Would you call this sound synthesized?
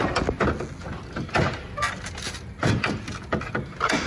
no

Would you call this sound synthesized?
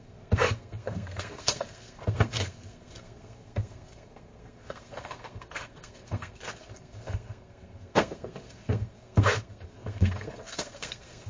yes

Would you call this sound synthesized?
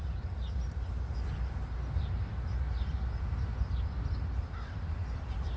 no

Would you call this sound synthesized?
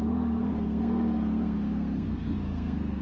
yes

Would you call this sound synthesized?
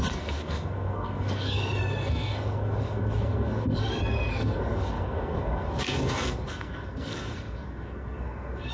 yes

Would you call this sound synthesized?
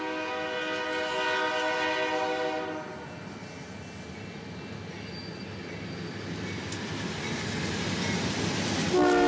no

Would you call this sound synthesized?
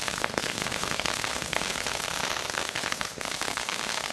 yes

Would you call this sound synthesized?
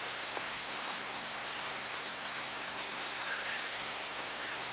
yes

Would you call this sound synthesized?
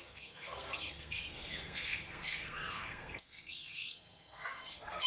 yes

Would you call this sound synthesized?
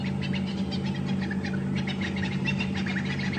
no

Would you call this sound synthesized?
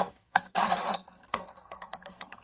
yes